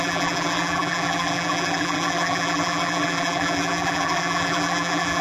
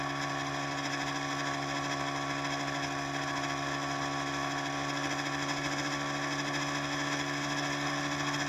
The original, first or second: second